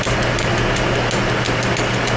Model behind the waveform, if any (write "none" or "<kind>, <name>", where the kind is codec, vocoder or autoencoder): none